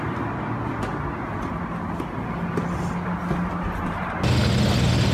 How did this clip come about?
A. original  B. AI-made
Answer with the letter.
A